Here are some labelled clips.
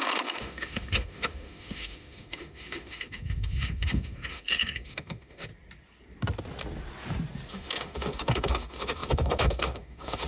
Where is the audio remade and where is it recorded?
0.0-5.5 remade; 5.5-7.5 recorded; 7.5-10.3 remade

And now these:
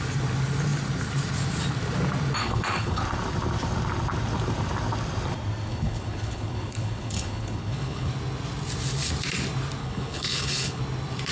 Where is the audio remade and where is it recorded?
0.0-2.4 recorded; 2.4-3.0 remade; 3.0-5.7 recorded; 5.7-8.1 remade; 8.1-9.8 recorded; 9.8-10.8 remade; 10.8-11.3 recorded

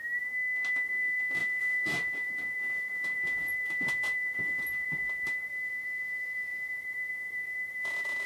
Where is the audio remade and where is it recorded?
0.0-0.7 recorded; 0.7-8.3 remade